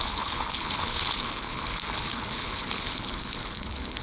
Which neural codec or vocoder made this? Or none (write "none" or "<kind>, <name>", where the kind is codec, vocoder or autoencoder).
codec, HILCodec